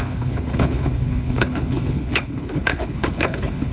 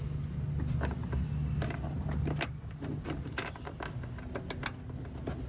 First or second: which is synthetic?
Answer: first